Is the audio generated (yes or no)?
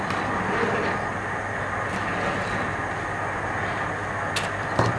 no